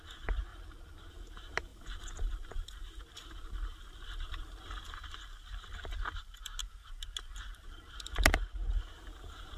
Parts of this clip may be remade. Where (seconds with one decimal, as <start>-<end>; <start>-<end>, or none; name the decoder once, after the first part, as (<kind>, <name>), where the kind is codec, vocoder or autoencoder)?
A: 0.5-1.1 (vocoder, BigVGAN v2); 1.7-4.8; 6.6-8.6